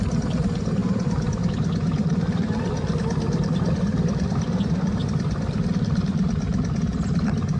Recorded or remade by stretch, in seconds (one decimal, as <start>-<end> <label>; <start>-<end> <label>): 0.0-0.8 recorded; 0.8-1.5 remade; 1.5-2.0 recorded; 2.0-5.7 remade; 5.7-7.6 recorded